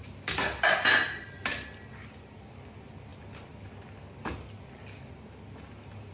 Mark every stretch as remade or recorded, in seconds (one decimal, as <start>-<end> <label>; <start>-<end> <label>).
0.0-6.1 recorded